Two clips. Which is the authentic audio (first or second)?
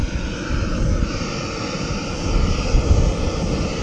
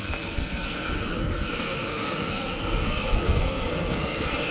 first